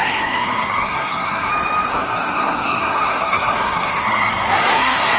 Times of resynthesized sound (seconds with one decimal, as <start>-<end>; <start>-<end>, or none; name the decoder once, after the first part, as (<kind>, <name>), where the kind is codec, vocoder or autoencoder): 0.0-1.5 (codec, SNAC); 1.9-5.2